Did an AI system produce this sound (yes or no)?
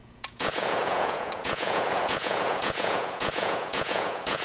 yes